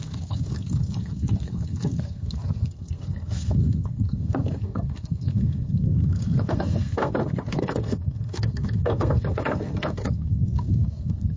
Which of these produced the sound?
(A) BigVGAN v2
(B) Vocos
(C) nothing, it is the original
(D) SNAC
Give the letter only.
D